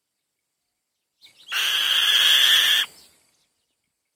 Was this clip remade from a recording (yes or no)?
no